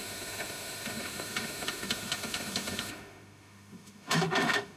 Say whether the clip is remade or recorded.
remade